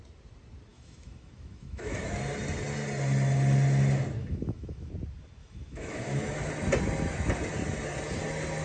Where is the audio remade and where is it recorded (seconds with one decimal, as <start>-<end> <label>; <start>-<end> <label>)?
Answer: 0.0-0.7 recorded; 0.7-2.2 remade; 2.2-4.2 recorded; 4.2-4.9 remade; 4.9-5.4 recorded; 5.4-6.5 remade; 6.5-8.6 recorded